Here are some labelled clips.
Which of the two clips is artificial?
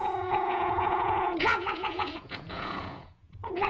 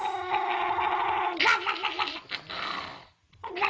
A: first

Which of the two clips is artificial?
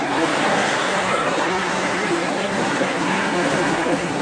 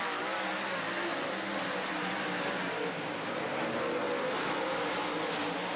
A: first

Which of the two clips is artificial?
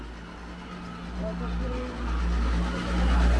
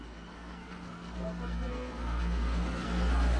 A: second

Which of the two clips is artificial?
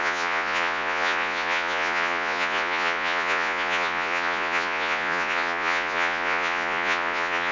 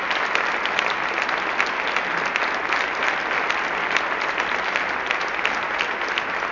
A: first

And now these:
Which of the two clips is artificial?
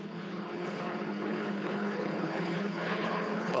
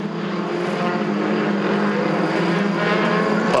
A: first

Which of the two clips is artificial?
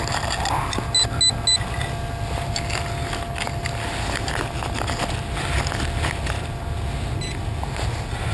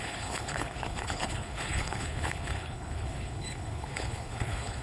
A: second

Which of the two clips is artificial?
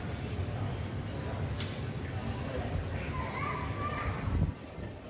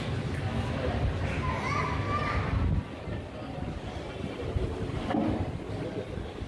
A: first